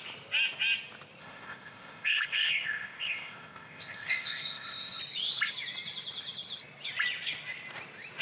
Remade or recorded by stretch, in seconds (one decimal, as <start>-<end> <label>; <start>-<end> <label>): 0.0-1.2 recorded; 1.2-5.0 remade; 5.0-8.2 recorded